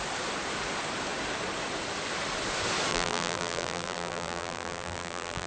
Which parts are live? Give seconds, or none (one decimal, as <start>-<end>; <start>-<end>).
0.0-2.9